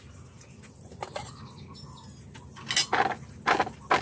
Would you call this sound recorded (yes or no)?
yes